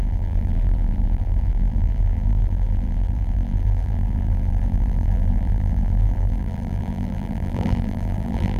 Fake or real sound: fake